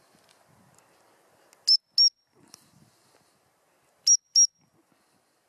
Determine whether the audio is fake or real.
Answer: real